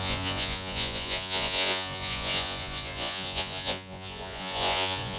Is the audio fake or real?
fake